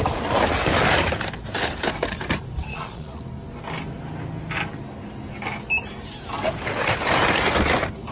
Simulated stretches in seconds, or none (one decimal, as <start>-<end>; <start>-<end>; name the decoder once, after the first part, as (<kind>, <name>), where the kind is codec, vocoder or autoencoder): 2.7-3.2 (vocoder, Vocos)